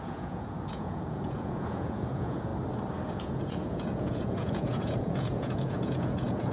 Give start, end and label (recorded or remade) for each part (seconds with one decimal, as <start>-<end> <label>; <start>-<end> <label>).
0.0-2.5 remade; 2.5-3.1 recorded; 3.1-6.5 remade